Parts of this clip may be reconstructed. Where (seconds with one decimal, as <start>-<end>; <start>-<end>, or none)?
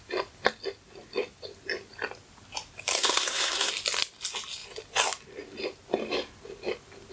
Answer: 2.9-3.7